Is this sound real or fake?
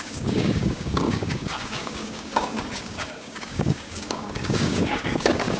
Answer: fake